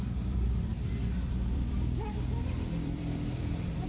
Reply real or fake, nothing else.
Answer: fake